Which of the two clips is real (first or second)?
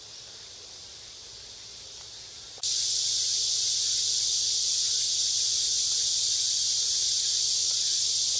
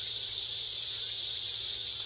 first